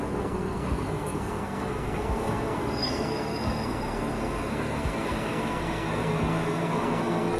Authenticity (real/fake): fake